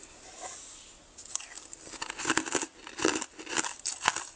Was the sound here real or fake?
real